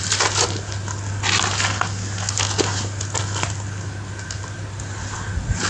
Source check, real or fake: real